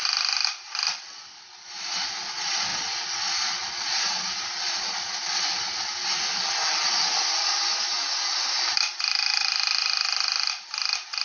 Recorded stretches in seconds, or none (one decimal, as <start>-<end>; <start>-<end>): 0.0-9.8; 10.7-11.2